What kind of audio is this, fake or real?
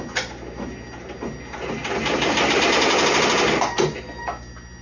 real